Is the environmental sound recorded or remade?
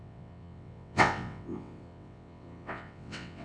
remade